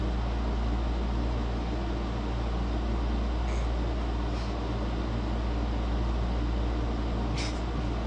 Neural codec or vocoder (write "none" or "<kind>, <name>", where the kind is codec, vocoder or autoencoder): none